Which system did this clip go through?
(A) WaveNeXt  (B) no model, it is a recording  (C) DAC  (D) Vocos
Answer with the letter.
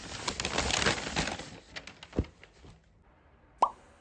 B